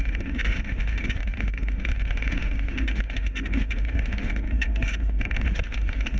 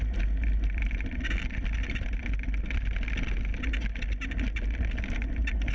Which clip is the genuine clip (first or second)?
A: second